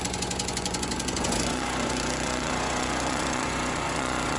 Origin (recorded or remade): remade